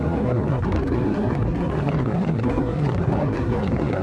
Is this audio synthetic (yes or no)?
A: yes